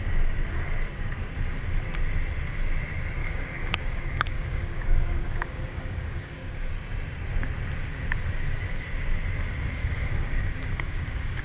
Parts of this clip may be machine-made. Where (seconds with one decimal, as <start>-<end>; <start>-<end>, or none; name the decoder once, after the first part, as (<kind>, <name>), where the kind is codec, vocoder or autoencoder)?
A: 3.2-6.7 (codec, DAC); 9.8-11.4